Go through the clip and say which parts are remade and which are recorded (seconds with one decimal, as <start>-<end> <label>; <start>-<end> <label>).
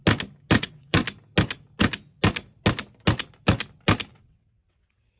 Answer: 0.0-0.6 recorded; 0.6-1.0 remade; 1.0-4.1 recorded; 4.1-5.2 remade